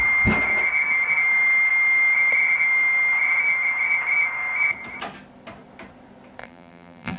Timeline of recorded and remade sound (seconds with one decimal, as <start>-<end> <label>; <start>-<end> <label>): 0.0-6.4 recorded; 6.4-7.2 remade